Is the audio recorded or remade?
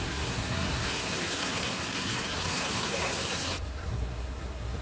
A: remade